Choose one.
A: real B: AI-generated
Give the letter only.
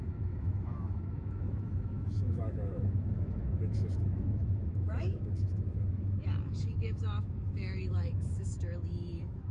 B